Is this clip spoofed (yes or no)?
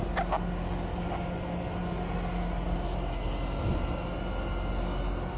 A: no